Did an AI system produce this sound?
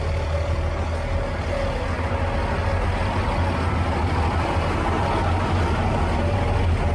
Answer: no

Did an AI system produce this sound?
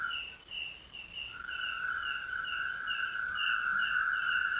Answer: no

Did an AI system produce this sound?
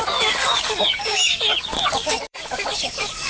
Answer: yes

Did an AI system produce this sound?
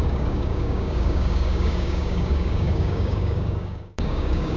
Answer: yes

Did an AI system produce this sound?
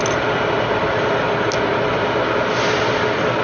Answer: no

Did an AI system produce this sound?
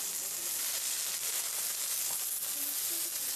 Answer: no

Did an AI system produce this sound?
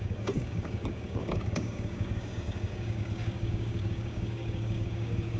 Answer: yes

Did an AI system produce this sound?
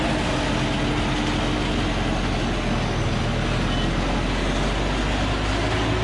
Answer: no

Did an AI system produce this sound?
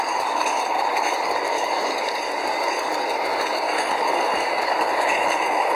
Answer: yes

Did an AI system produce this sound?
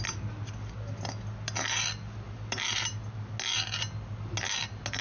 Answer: no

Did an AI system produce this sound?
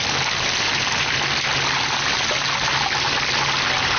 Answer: no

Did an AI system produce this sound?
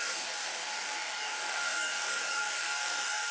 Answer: yes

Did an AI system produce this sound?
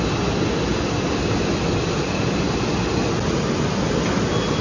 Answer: no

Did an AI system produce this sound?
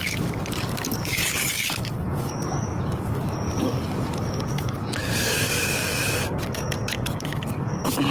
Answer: yes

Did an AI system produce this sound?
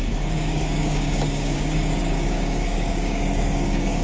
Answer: yes